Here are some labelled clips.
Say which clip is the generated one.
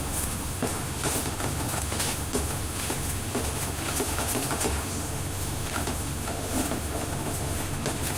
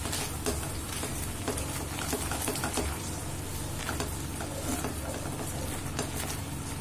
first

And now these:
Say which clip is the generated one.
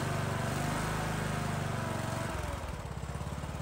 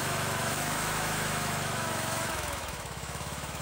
second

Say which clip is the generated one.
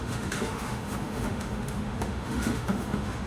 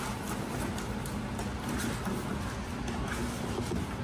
first